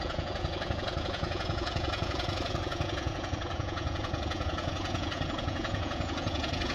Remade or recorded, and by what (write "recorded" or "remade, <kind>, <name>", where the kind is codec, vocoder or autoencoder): remade, vocoder, Vocos